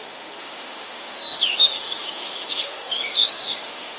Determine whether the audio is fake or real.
fake